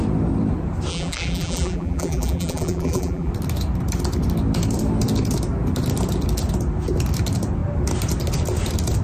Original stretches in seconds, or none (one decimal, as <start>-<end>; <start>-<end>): 0.0-0.9; 3.3-9.0